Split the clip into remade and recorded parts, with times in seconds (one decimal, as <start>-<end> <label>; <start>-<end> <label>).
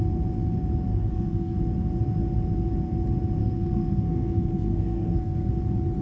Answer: 0.0-0.9 recorded; 0.9-1.7 remade; 1.7-3.4 recorded; 3.4-5.5 remade; 5.5-6.0 recorded